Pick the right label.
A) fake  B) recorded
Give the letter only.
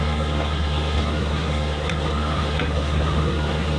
A